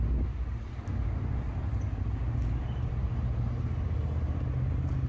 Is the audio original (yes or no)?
yes